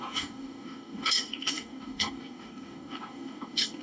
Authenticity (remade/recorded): remade